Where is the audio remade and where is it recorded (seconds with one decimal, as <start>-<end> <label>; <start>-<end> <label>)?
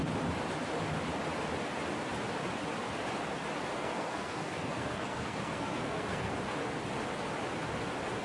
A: 0.0-3.7 recorded; 3.7-6.3 remade; 6.3-8.2 recorded